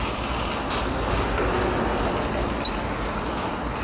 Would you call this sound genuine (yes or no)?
yes